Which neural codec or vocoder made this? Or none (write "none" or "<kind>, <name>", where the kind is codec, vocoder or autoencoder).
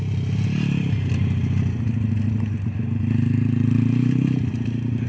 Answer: none